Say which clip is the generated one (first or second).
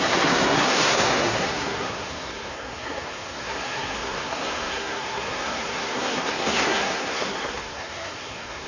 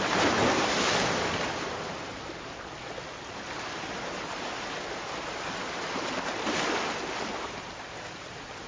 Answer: first